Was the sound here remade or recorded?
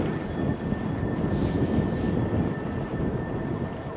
recorded